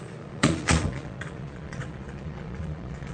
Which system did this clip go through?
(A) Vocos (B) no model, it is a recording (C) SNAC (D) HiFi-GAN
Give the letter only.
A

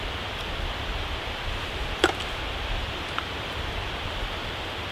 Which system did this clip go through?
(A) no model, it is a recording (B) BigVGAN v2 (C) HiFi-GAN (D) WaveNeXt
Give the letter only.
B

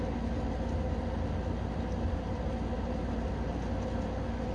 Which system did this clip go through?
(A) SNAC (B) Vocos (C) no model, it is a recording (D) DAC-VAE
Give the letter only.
C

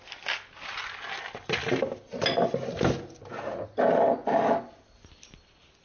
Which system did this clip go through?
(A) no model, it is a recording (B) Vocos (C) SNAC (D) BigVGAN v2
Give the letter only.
A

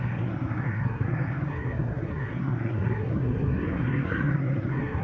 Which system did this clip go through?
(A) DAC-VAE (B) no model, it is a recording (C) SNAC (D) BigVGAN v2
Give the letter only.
C